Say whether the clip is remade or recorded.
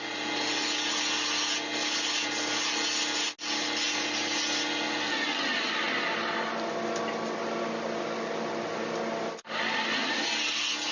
recorded